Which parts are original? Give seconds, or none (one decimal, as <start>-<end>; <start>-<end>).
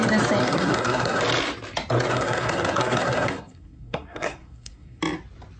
0.0-0.4; 1.2-2.1; 5.0-5.6